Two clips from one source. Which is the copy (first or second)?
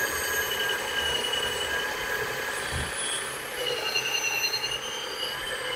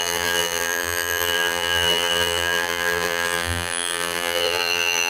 second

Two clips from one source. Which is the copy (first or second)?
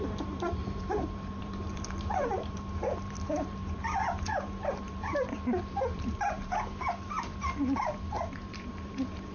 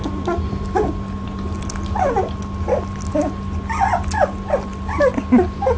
first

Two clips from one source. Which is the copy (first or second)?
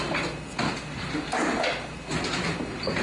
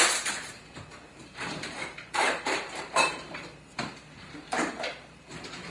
second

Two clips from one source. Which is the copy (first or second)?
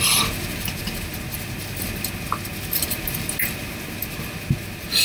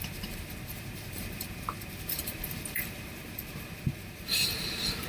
second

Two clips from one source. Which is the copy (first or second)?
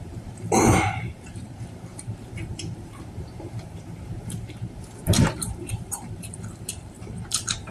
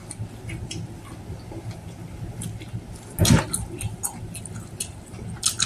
first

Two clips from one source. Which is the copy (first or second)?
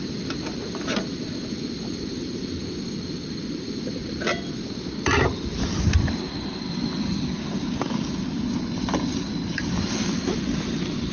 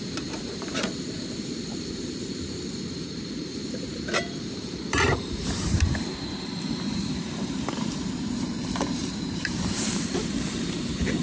second